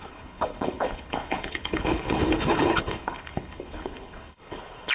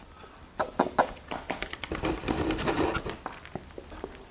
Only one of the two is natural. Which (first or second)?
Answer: second